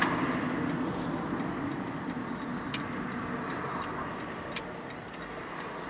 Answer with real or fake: real